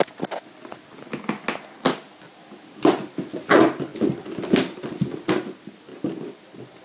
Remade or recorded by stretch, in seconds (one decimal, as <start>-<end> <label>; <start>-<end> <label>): 0.0-2.3 recorded; 2.3-3.0 remade; 3.0-3.9 recorded; 3.9-4.8 remade; 4.8-5.9 recorded; 5.9-6.8 remade